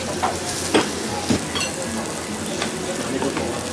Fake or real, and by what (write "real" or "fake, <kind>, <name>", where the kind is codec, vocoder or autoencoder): real